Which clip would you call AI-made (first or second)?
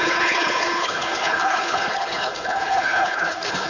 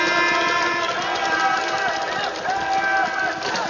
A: first